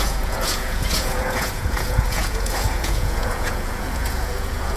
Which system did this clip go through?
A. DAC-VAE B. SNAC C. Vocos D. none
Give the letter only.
C